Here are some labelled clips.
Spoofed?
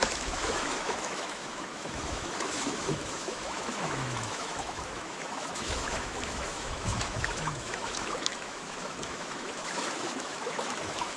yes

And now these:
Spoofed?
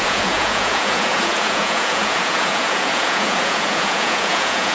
yes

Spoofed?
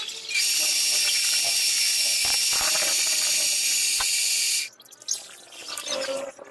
no